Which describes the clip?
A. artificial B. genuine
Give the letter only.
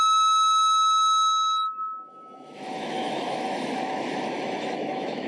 A